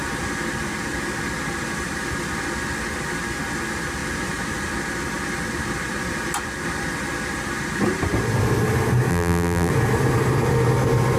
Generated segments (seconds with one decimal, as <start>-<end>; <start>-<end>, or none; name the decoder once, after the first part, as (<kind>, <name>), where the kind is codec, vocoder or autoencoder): 9.1-9.7 (vocoder, BigVGAN v2)